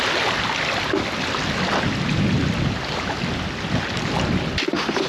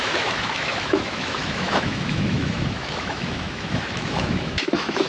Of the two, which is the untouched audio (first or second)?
first